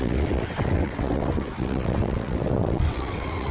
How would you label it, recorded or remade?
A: remade